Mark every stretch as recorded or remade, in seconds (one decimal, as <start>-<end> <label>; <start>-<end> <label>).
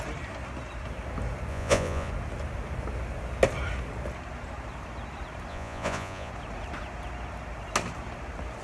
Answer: 0.0-1.5 recorded; 1.5-2.1 remade; 2.1-5.5 recorded; 5.5-6.3 remade; 6.3-8.6 recorded